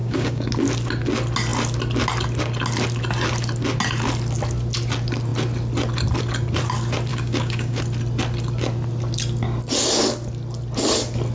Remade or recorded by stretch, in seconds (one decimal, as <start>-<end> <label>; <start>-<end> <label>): 0.0-0.5 remade; 0.5-7.1 recorded; 7.1-7.8 remade; 7.8-11.3 recorded